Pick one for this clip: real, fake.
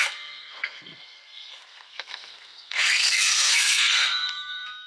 fake